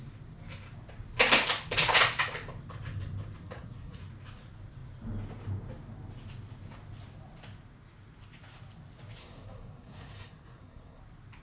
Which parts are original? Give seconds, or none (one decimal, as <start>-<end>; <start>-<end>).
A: 0.0-3.4; 4.0-9.2; 11.0-11.4